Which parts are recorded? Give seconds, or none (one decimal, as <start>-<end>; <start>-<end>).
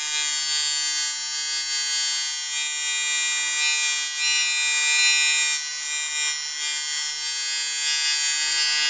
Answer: 0.0-8.9